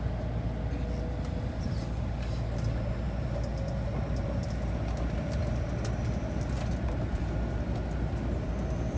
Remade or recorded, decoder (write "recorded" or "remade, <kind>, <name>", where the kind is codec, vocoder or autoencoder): recorded